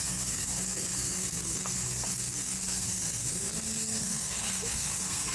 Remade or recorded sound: remade